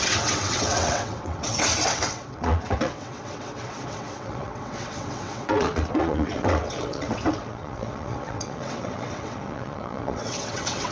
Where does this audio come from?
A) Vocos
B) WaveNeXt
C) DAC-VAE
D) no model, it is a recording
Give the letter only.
B